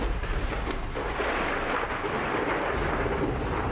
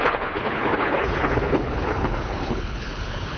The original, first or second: first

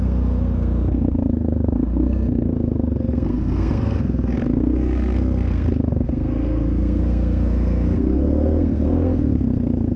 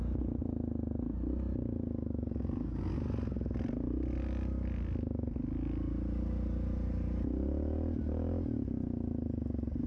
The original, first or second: second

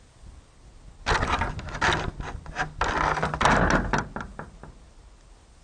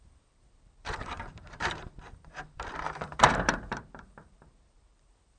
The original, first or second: first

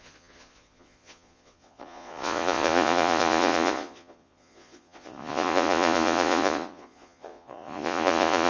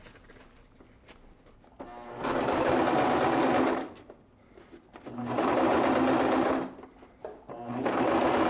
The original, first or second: second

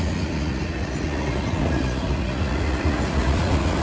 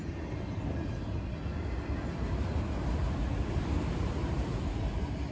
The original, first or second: second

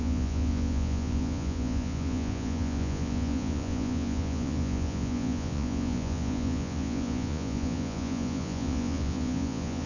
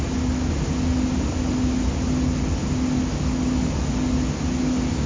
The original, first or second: second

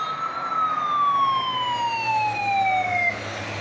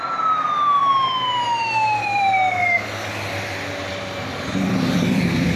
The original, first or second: first